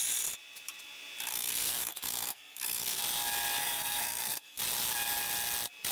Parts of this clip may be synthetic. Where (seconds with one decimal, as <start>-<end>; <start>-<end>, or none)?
1.3-3.0; 3.6-4.6